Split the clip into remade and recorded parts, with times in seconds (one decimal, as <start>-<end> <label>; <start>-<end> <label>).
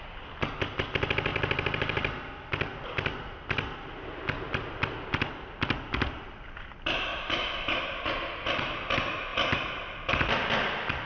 0.0-1.3 recorded; 1.3-2.3 remade; 2.3-7.1 recorded; 7.1-7.8 remade; 7.8-11.1 recorded